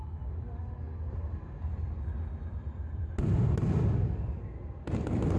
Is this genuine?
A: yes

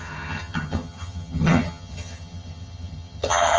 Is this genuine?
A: no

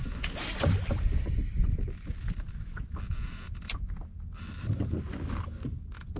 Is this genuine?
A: yes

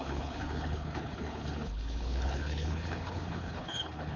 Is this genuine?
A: no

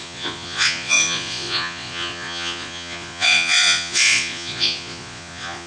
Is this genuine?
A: no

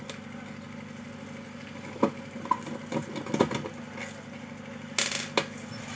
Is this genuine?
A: yes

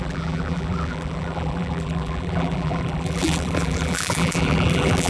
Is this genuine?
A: no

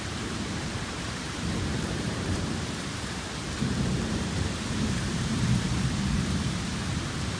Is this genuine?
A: no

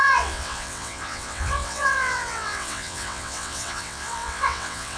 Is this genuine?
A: no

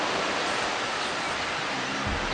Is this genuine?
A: yes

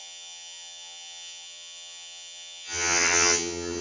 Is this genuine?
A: no